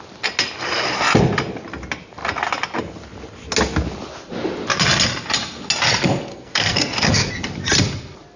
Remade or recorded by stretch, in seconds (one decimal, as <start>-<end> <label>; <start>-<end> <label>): 0.0-6.3 recorded; 6.3-7.3 remade; 7.3-8.4 recorded

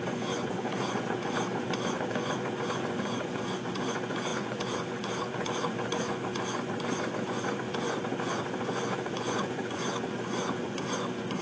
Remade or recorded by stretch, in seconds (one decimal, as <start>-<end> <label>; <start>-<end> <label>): 0.0-11.4 remade

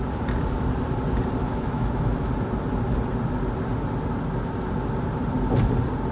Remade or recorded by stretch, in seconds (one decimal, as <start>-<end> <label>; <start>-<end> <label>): 0.0-1.4 recorded; 1.4-2.3 remade; 2.3-6.1 recorded

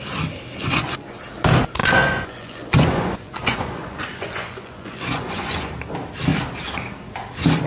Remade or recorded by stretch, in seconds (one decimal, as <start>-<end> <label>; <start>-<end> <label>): 0.0-0.6 recorded; 0.6-1.2 remade; 1.2-1.8 recorded; 1.8-5.7 remade; 5.7-7.7 recorded

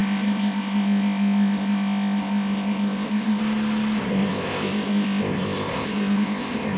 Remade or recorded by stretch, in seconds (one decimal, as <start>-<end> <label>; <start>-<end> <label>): 0.0-3.4 remade; 3.4-4.1 recorded; 4.1-6.8 remade

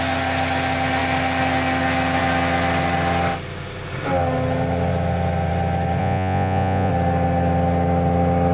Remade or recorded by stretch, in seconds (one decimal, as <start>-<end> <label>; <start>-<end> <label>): 0.0-6.0 recorded; 6.0-6.9 remade; 6.9-8.5 recorded